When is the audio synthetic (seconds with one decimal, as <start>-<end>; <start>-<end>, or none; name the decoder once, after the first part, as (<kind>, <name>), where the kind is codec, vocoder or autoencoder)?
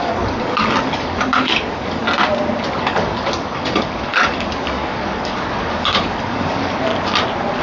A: 0.0-2.0 (codec, DAC); 2.8-6.9